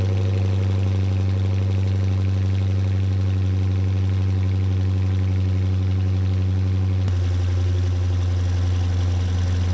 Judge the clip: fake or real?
real